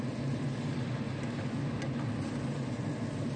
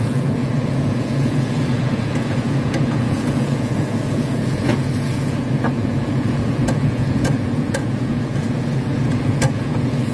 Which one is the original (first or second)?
first